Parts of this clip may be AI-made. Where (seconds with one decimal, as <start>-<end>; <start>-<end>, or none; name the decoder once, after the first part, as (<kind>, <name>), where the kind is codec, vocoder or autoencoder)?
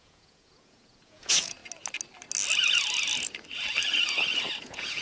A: 0.0-1.6 (vocoder, Vocos); 4.6-5.0